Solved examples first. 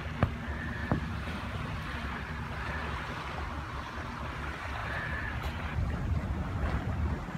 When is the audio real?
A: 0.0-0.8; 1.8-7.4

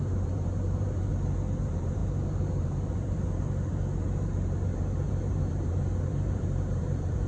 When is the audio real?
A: 1.1-1.6

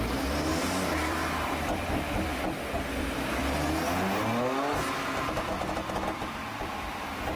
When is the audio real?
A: 0.0-0.5; 3.0-7.4

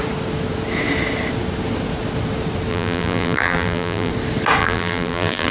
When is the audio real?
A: 0.0-2.7; 4.1-4.6

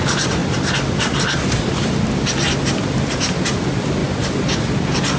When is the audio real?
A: 0.4-3.5; 4.0-5.2

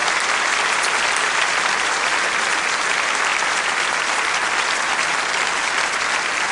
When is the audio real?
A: 0.0-6.5